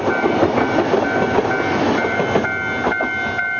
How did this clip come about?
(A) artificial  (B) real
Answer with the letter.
B